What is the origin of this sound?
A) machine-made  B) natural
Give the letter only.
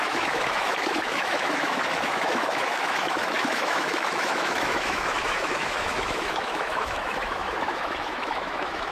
A